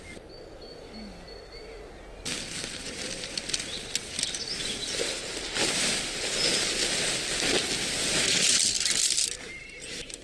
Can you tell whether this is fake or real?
real